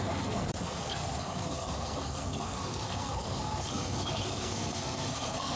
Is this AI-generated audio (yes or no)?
yes